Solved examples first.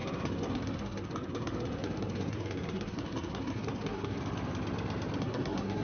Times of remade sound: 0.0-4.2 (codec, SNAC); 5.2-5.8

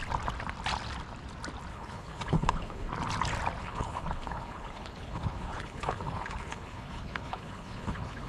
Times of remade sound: 1.7-2.9 (codec, HILCodec); 3.6-8.3

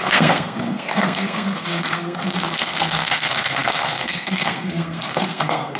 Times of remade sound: 0.0-5.8 (codec, SNAC)

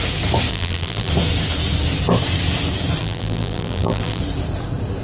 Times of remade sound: 0.5-1.1 (vocoder, BigVGAN v2); 3.0-4.2

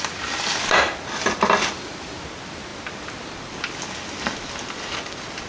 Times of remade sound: none